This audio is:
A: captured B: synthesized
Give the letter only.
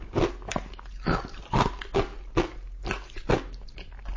A